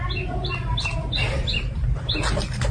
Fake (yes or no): no